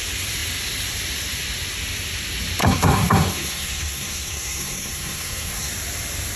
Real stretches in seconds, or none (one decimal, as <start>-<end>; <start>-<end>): 0.0-2.6; 5.7-6.4